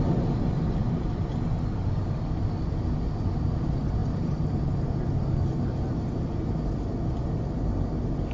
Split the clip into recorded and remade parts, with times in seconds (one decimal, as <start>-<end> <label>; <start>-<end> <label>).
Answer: 0.0-8.3 recorded